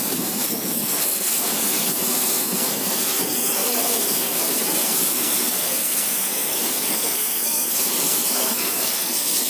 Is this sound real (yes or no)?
no